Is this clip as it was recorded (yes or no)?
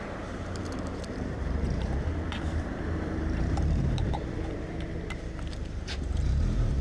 no